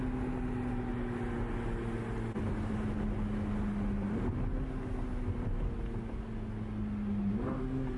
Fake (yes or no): no